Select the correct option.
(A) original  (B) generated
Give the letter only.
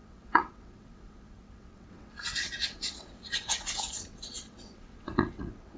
B